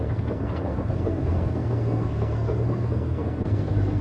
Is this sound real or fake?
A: fake